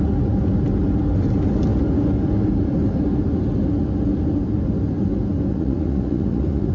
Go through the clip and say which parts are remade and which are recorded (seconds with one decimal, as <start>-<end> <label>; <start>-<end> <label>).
0.0-5.5 recorded; 5.5-6.7 remade